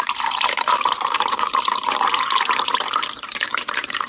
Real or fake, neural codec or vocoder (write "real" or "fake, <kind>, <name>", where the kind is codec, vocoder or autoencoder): fake, vocoder, BigVGAN v2